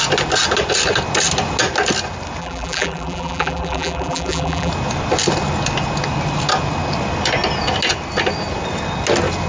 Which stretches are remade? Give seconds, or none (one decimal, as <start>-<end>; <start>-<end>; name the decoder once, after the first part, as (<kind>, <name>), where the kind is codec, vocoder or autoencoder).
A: 2.4-4.7 (vocoder, BigVGAN v2)